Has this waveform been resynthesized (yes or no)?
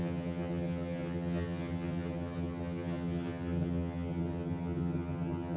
yes